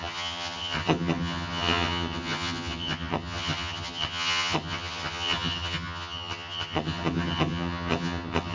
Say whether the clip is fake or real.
fake